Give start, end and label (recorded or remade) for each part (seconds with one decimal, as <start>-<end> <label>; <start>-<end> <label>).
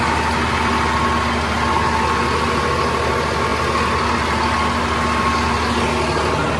0.0-6.6 recorded